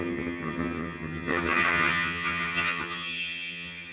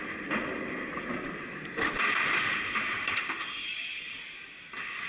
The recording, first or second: second